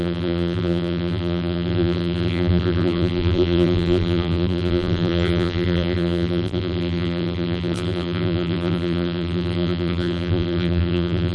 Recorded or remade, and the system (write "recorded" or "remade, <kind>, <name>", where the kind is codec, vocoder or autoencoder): remade, vocoder, BigVGAN v2